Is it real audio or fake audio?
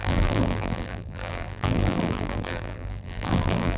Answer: fake